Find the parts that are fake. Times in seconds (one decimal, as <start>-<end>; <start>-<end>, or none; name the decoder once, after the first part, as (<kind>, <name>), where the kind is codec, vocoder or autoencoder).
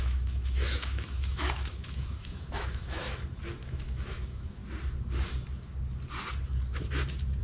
0.0-3.0 (autoencoder, DAC-VAE); 3.6-4.6